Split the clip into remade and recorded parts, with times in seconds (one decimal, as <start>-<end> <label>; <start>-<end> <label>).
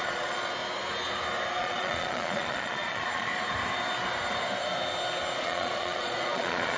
0.0-0.6 remade; 0.6-1.6 recorded; 1.6-3.3 remade; 3.3-5.4 recorded; 5.4-6.8 remade